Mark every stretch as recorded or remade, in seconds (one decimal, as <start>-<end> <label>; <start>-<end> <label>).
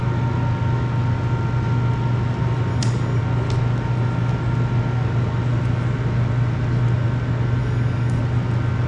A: 0.0-2.7 recorded; 2.7-3.2 remade; 3.2-7.6 recorded; 7.6-8.2 remade; 8.2-8.9 recorded